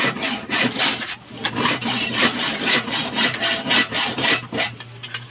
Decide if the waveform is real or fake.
fake